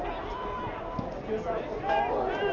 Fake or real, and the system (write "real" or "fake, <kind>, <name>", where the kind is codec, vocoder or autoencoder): real